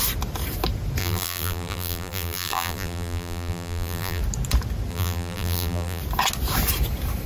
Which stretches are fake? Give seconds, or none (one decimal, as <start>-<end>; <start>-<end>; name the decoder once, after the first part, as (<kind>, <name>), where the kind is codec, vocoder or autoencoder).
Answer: 1.0-4.2 (vocoder, BigVGAN v2); 4.9-6.0